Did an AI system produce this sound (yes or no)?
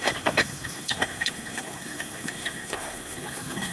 yes